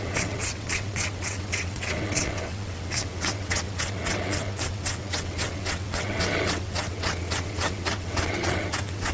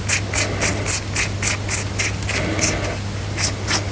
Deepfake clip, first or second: first